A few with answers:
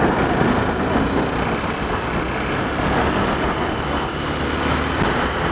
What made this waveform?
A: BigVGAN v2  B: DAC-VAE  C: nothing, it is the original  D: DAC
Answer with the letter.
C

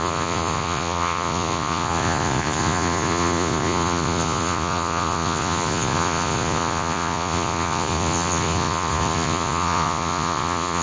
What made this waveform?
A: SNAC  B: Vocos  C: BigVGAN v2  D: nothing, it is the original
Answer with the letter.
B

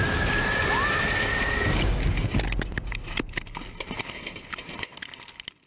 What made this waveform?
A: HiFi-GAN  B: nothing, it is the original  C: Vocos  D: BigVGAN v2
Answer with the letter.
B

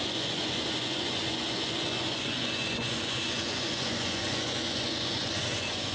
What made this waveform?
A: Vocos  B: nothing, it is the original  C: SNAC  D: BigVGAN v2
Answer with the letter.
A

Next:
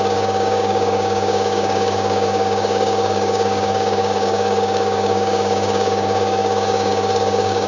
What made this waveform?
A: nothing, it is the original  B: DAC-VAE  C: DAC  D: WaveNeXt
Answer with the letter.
C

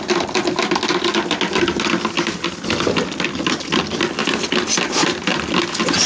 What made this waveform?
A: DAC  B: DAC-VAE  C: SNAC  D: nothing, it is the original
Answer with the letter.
D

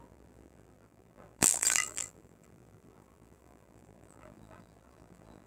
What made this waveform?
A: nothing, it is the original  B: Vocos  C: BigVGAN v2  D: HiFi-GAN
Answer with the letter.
C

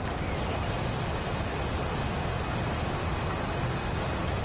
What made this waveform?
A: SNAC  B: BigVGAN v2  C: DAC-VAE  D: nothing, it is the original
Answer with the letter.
D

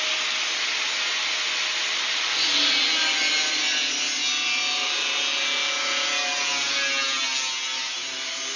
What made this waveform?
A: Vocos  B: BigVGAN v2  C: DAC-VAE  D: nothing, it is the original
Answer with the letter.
D